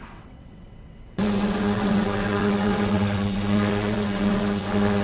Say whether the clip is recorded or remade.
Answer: remade